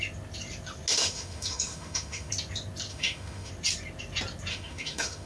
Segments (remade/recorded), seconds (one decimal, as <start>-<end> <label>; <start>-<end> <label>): 0.0-0.9 recorded; 0.9-2.3 remade; 2.3-2.9 recorded; 2.9-3.5 remade; 3.5-4.5 recorded; 4.5-5.3 remade